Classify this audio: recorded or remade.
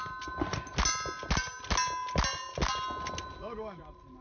recorded